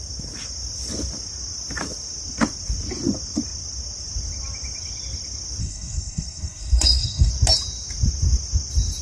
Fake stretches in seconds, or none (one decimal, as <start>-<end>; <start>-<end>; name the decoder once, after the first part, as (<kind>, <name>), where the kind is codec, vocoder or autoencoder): 5.6-7.3 (codec, SNAC)